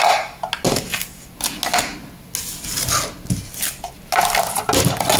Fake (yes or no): no